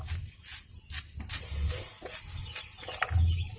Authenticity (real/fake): real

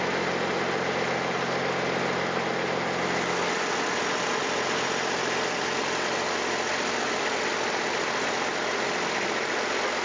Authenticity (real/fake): real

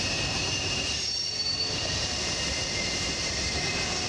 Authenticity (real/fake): real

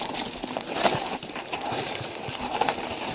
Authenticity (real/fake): fake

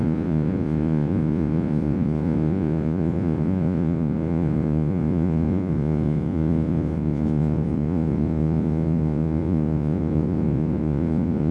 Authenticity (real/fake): fake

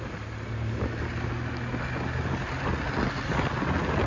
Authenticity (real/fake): real